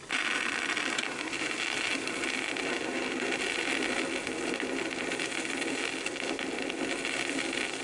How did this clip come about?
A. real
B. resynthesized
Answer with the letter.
A